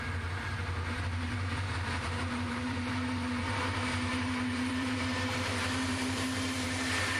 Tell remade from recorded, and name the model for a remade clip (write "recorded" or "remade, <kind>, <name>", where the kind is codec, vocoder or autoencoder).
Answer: remade, vocoder, BigVGAN v2